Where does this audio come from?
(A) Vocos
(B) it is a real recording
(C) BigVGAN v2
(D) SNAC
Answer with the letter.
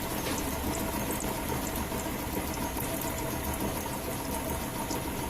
B